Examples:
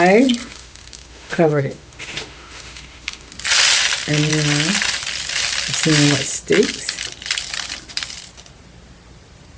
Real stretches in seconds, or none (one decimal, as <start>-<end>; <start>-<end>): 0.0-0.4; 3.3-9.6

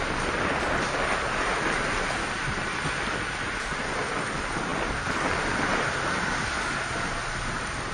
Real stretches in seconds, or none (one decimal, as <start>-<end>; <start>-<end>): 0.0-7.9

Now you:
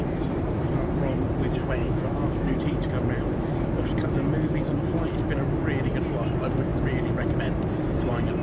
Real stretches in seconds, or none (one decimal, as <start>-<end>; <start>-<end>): 0.0-1.8; 2.6-8.4

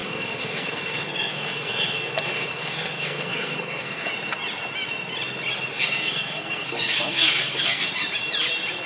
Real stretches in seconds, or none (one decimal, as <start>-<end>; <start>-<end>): 4.1-5.7; 7.9-8.9

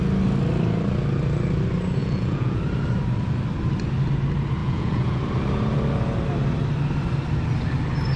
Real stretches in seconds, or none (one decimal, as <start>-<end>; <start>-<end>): 0.0-2.0; 2.6-4.6; 5.2-8.2

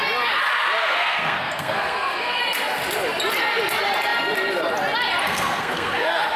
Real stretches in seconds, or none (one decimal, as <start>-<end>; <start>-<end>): 0.0-0.8; 2.4-5.2